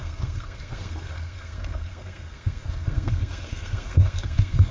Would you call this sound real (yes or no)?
no